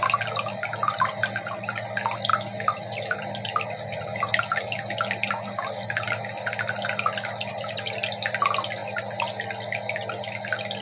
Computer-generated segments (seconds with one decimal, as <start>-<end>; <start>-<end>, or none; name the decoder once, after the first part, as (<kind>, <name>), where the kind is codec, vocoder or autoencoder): none